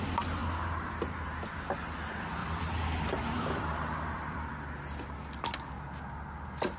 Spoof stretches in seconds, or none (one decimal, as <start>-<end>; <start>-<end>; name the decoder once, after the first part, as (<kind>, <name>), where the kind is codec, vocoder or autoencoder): 2.4-4.5 (vocoder, BigVGAN v2)